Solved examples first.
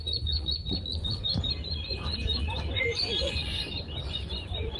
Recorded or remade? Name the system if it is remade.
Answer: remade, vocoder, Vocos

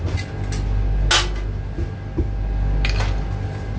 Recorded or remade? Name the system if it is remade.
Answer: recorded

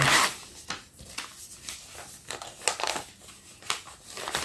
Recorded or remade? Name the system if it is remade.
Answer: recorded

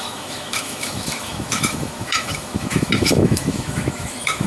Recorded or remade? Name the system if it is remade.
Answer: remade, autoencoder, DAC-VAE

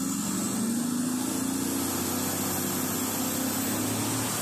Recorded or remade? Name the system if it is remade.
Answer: recorded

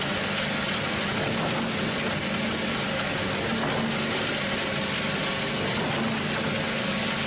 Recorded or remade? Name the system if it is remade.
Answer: recorded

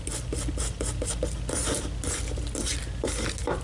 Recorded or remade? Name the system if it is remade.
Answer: recorded